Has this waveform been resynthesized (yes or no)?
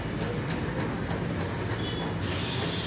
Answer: no